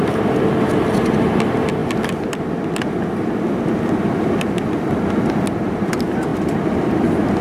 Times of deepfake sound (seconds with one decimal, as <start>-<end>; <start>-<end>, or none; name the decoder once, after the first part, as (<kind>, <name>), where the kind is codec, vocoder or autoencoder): none